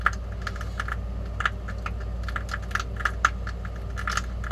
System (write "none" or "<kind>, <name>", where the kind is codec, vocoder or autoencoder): none